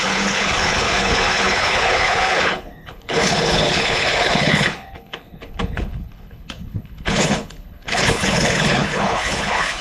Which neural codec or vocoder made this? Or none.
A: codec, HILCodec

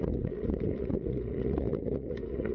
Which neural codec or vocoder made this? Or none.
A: vocoder, Vocos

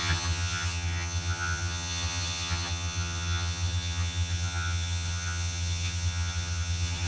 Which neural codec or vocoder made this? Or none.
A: vocoder, HiFi-GAN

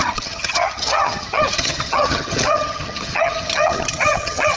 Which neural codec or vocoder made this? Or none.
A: vocoder, HiFi-GAN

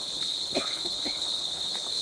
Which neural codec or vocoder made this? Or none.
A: codec, HILCodec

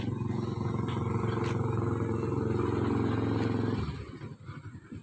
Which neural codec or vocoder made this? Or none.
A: none